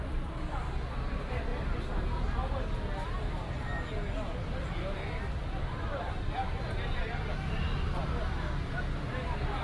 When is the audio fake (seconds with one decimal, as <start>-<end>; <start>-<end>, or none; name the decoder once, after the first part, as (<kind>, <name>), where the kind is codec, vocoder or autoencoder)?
none

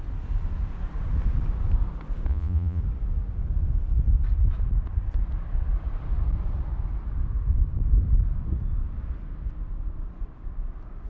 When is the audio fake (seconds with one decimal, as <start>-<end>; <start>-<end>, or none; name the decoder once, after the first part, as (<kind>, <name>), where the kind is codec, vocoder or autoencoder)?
2.3-2.8 (vocoder, Vocos)

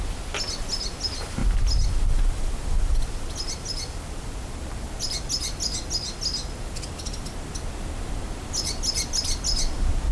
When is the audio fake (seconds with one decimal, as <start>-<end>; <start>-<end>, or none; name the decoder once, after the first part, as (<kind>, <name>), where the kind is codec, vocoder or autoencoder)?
none

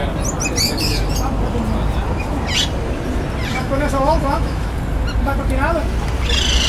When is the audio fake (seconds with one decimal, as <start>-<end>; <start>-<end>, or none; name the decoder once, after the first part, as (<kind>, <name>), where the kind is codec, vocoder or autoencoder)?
3.5-4.7 (autoencoder, DAC-VAE)